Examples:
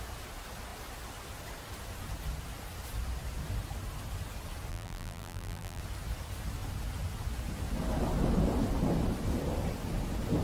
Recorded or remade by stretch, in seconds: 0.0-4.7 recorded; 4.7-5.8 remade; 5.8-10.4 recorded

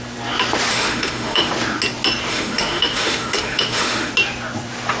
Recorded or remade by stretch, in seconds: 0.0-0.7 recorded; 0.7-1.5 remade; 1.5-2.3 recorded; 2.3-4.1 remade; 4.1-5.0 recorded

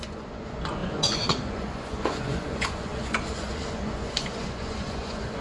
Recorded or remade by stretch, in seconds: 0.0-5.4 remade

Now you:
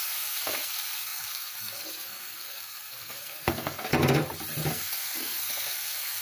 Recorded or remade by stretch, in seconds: 0.0-3.9 remade; 3.9-4.7 recorded; 4.7-6.2 remade

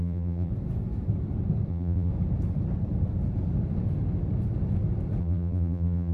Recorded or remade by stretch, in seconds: 0.0-0.5 remade; 0.5-1.7 recorded; 1.7-2.1 remade; 2.1-5.2 recorded; 5.2-6.1 remade

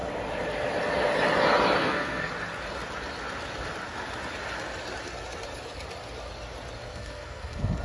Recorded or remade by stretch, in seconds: 0.0-1.8 recorded; 1.8-2.3 remade; 2.3-6.9 recorded; 6.9-7.8 remade